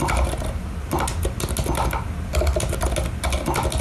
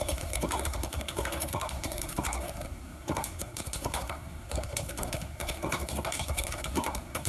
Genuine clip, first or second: first